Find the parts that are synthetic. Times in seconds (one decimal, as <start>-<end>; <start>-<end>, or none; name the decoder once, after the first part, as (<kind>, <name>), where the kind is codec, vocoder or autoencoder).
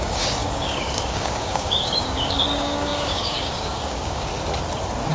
0.0-4.3 (codec, DAC)